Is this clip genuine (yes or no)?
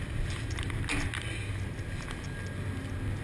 yes